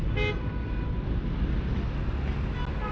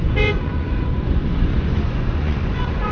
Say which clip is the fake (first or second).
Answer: second